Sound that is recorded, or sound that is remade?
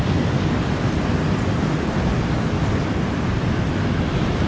recorded